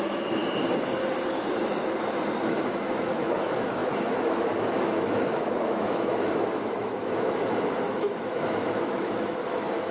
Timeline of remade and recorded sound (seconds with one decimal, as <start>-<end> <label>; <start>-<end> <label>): 0.0-0.4 remade; 0.4-2.5 recorded; 2.5-9.9 remade